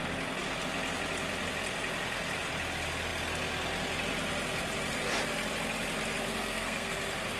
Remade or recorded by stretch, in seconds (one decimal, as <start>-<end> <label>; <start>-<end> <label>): 0.0-6.3 recorded; 6.3-6.9 remade; 6.9-7.4 recorded